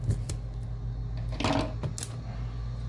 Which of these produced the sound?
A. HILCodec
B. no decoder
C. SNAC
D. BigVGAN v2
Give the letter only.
B